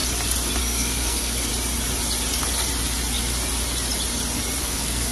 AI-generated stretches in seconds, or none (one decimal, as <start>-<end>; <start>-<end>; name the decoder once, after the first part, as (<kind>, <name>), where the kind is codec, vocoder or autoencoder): 0.6-1.5 (codec, SNAC); 4.6-5.1